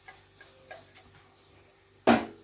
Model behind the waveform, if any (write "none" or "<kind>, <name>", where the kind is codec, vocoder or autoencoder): none